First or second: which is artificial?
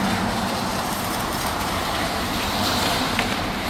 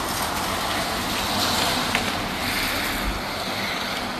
first